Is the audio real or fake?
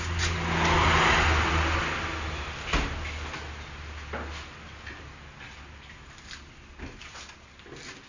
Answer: real